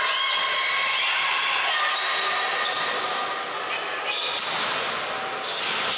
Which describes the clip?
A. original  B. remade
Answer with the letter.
A